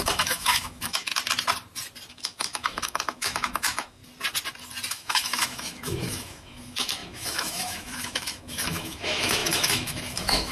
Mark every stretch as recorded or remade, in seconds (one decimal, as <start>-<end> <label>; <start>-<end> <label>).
0.0-1.1 remade; 1.1-2.1 recorded; 2.1-4.0 remade; 4.0-4.9 recorded; 4.9-10.5 remade